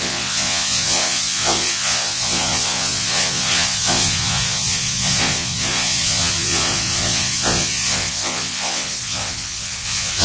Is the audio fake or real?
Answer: fake